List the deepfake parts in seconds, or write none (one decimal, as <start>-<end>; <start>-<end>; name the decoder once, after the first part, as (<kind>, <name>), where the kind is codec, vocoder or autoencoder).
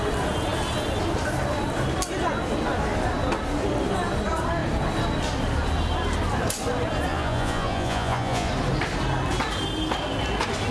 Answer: 7.1-8.5 (vocoder, Vocos)